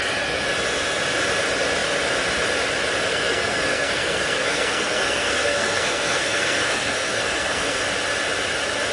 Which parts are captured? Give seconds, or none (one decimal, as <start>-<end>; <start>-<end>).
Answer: 0.0-3.1; 7.8-8.9

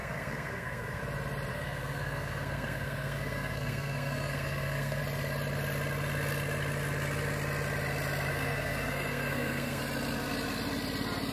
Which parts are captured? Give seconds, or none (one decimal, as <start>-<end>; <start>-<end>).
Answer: 1.0-1.5; 5.0-8.3; 9.8-11.3

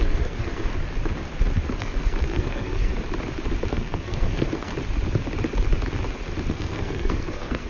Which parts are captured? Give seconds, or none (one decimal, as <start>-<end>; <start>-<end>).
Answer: 0.7-1.8; 2.9-3.7; 4.7-6.5

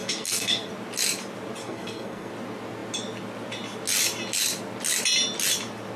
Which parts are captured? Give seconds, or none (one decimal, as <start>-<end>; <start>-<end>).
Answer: 0.7-1.6; 2.3-6.0